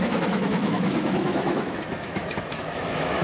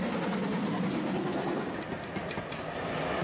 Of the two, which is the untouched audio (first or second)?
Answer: second